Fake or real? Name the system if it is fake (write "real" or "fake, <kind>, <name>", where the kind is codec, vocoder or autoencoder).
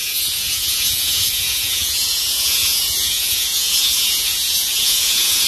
fake, vocoder, Vocos